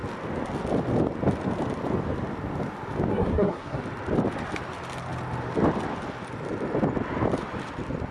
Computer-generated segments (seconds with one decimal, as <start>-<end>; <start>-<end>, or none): 3.1-3.8